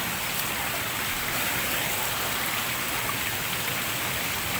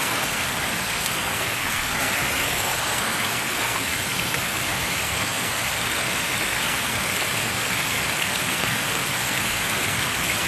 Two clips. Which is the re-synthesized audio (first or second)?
second